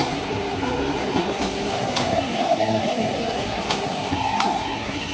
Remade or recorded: remade